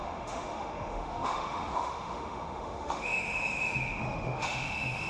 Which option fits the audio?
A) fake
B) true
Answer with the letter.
A